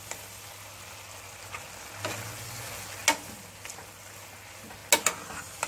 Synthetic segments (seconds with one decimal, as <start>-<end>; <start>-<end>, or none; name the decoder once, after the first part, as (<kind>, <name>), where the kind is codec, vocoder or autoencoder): none